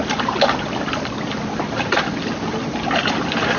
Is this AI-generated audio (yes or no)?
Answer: no